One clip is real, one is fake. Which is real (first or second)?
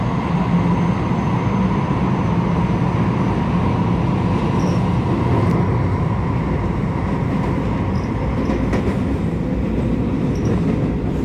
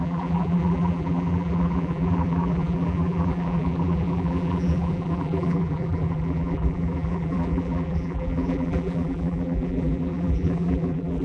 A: first